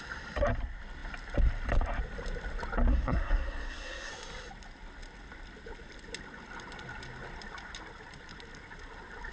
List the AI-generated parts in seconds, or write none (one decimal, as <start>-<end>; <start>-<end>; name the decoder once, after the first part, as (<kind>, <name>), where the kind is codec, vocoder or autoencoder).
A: 2.9-4.1 (codec, SNAC)